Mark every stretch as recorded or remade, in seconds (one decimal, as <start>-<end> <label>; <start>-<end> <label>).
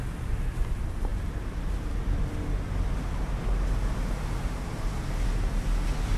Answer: 0.0-6.2 recorded